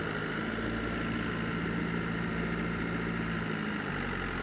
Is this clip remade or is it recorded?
recorded